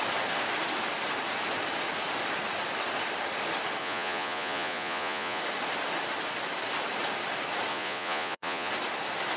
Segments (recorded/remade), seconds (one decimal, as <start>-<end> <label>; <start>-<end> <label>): 0.0-3.8 recorded; 3.8-5.4 remade; 5.4-7.7 recorded; 7.7-8.7 remade; 8.7-9.4 recorded